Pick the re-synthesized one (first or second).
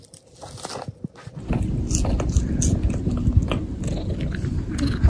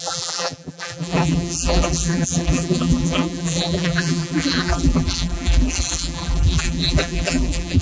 second